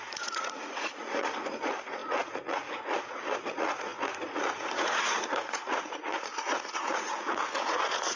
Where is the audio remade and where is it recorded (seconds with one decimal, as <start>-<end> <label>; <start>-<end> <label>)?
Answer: 0.0-8.2 remade